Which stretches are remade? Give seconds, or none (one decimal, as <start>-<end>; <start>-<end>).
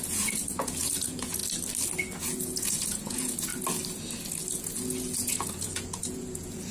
0.0-1.4; 2.2-3.5; 4.5-6.7